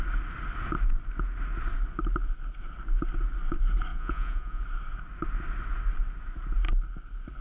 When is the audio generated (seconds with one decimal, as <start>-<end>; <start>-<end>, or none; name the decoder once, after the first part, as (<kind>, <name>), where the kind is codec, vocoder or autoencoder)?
3.9-4.6 (vocoder, Vocos)